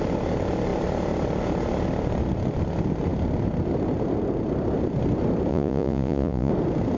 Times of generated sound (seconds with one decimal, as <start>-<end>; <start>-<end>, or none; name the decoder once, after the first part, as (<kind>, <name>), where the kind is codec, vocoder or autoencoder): 5.5-6.5 (vocoder, Vocos)